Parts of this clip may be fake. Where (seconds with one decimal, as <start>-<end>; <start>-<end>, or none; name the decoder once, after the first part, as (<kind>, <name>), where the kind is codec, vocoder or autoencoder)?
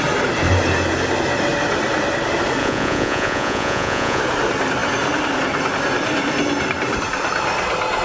2.6-4.2 (vocoder, Vocos)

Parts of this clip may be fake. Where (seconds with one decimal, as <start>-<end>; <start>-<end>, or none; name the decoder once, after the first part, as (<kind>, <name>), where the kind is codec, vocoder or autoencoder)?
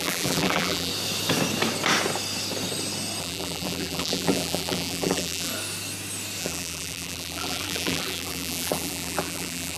0.0-0.9 (vocoder, BigVGAN v2); 3.2-5.5; 6.4-9.8